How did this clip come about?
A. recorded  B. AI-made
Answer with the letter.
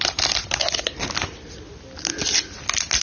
A